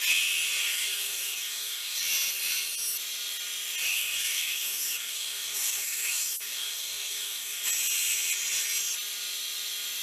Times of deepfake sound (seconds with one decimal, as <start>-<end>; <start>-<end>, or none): 0.6-2.0; 3.8-7.6